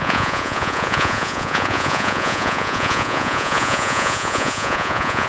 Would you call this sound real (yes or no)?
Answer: no